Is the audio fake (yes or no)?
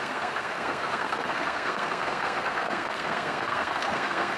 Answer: yes